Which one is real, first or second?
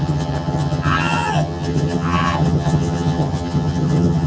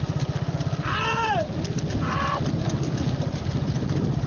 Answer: second